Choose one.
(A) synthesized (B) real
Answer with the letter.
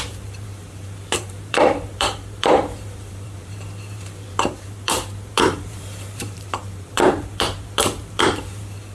A